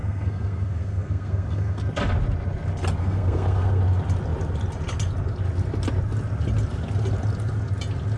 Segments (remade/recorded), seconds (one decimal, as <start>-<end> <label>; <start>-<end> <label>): 0.0-1.8 remade; 1.8-3.0 recorded; 3.0-3.8 remade; 3.8-8.2 recorded